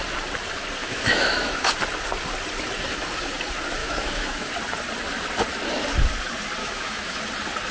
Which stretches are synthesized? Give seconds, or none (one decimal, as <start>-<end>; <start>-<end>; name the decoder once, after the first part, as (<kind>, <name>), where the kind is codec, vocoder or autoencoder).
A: 0.8-1.7 (autoencoder, DAC-VAE); 3.8-4.5; 6.6-7.2